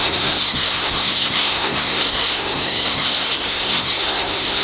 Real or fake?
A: fake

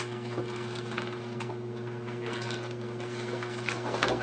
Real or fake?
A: fake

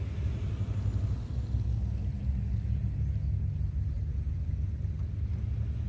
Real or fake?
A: real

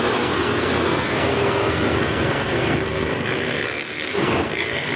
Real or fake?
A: fake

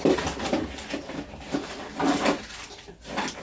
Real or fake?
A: real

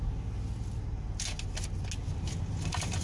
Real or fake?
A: real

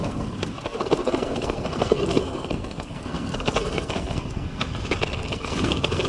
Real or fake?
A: fake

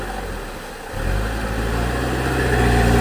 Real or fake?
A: real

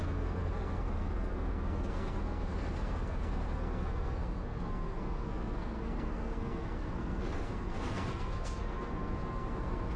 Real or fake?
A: fake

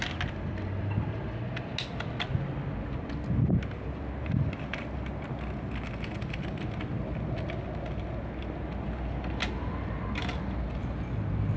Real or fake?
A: real